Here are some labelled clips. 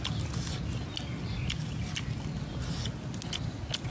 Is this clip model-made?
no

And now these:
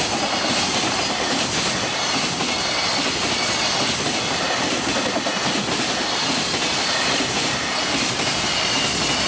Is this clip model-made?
no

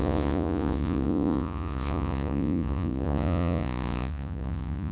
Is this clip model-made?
yes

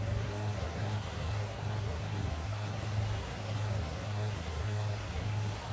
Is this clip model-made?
yes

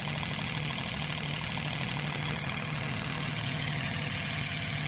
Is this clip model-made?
yes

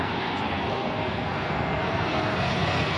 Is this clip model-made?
yes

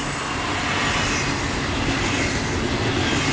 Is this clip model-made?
no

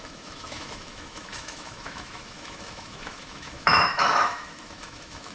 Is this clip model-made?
yes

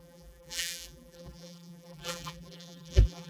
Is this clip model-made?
yes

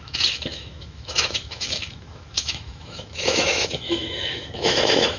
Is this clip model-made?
yes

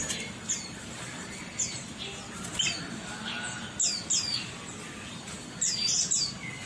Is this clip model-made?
no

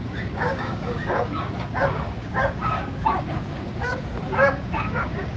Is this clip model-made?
yes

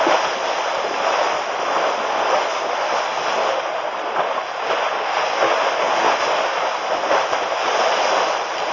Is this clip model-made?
no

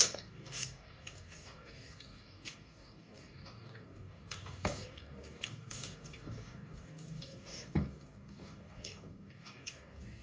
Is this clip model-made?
yes